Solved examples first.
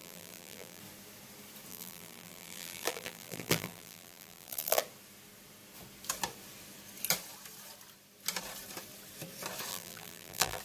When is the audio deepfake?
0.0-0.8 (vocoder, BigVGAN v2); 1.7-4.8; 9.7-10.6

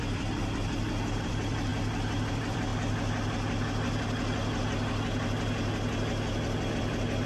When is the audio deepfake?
0.0-1.7 (vocoder, BigVGAN v2); 2.3-2.7; 6.7-7.3

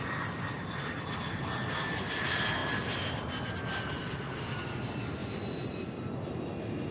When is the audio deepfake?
5.2-6.3 (vocoder, BigVGAN v2)

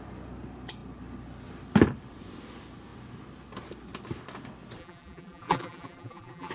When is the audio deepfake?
4.8-6.5 (vocoder, BigVGAN v2)

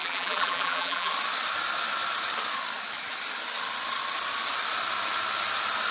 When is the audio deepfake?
0.0-1.1 (vocoder, BigVGAN v2)

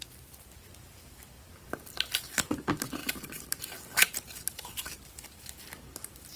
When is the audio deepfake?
3.0-3.6 (vocoder, BigVGAN v2)